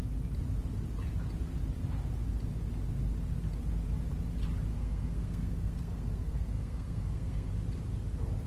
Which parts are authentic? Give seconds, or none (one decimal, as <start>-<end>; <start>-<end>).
0.0-4.7; 7.5-8.5